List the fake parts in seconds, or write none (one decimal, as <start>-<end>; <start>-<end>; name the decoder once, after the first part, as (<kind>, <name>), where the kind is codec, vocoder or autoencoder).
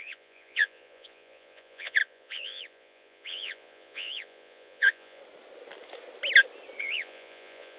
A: 0.0-5.2 (vocoder, Vocos); 6.8-7.8